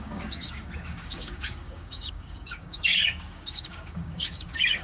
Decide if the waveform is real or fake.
fake